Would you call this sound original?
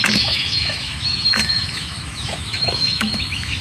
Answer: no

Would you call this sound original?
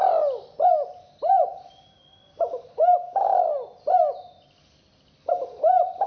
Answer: yes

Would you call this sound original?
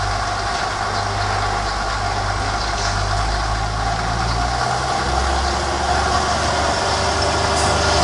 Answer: yes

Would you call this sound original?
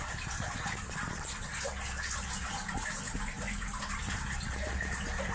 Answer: yes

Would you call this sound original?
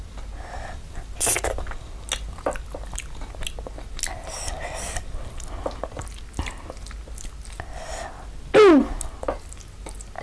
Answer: yes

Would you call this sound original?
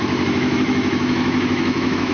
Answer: no